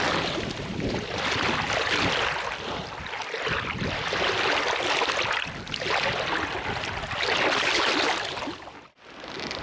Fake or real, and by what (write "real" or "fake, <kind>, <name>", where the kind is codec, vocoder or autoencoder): real